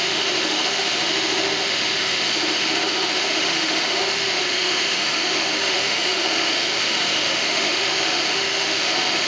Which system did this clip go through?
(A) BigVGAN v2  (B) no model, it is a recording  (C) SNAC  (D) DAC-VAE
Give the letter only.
D